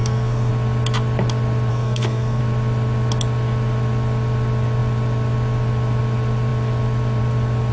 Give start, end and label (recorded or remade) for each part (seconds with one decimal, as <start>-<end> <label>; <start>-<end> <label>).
0.0-0.5 remade; 0.5-1.7 recorded; 1.7-2.4 remade; 2.4-7.7 recorded